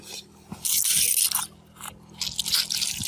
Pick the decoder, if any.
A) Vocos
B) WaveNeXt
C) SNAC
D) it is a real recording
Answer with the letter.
D